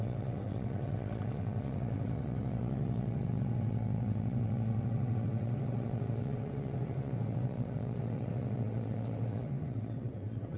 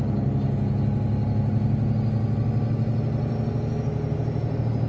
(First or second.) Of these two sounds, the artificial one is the first